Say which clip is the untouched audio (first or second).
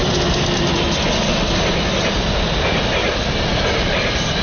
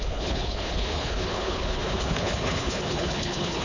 first